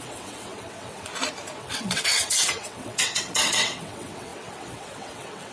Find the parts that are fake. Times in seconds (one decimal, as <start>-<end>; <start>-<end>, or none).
0.0-1.1; 1.6-5.5